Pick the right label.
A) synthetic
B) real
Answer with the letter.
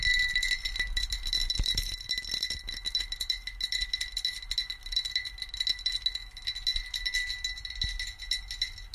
B